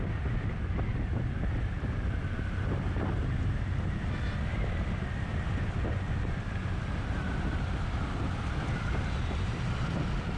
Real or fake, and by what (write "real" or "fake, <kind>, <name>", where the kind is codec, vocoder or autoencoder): real